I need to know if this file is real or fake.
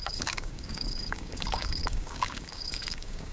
fake